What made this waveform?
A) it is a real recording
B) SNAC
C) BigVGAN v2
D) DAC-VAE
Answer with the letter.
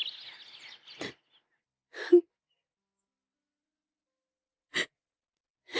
A